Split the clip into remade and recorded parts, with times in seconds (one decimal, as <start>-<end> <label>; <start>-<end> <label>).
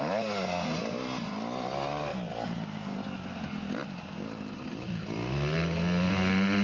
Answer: 0.0-6.6 recorded